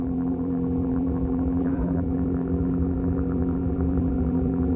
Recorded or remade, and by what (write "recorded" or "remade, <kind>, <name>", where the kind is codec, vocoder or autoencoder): remade, vocoder, BigVGAN v2